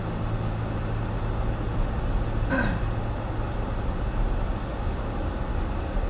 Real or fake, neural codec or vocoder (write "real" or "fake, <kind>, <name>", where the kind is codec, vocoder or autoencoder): real